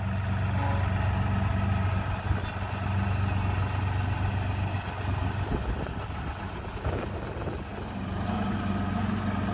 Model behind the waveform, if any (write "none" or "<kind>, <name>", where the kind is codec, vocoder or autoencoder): none